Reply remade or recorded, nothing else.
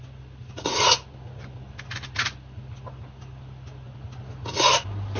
recorded